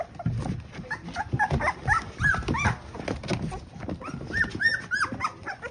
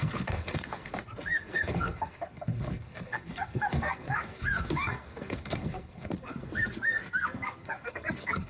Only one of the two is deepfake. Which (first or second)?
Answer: second